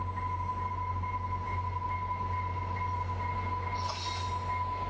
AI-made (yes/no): no